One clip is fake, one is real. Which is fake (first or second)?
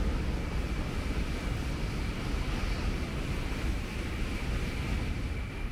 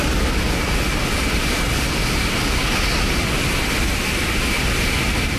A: first